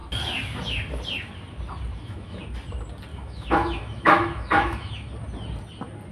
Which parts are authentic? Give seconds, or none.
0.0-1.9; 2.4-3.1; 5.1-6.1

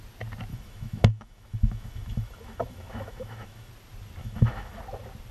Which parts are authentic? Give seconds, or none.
0.0-0.5; 3.7-4.2; 4.8-5.3

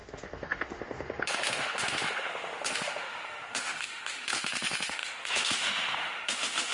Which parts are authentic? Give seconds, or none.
none

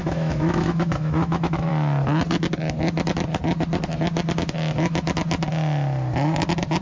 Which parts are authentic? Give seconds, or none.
1.7-6.8

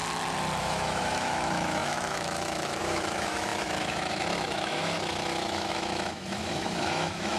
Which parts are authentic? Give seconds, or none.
0.0-0.6

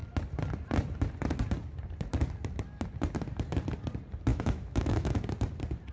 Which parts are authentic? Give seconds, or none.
0.0-4.3; 5.2-5.9

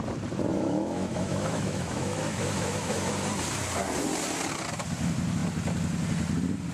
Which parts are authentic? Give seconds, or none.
0.0-0.5; 3.1-6.7